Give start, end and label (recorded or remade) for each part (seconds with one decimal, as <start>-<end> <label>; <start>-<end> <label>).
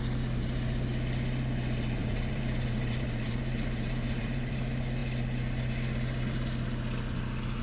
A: 0.0-2.0 recorded; 2.0-4.5 remade; 4.5-7.6 recorded